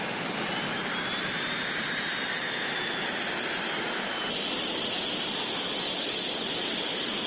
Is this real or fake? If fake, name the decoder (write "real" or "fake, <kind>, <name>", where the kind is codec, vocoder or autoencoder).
real